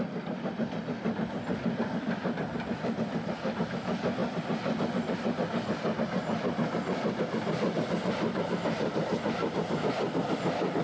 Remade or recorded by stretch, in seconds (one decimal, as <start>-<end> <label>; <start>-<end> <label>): 0.0-10.8 recorded